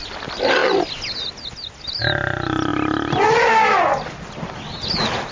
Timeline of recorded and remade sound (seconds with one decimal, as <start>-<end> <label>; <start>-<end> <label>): 0.0-5.3 recorded